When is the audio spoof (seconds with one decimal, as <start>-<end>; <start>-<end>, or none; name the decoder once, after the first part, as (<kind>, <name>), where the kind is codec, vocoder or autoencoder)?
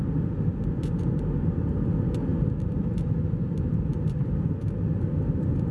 none